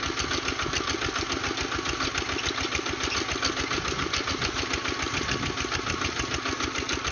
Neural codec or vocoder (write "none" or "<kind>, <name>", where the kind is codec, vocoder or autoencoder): none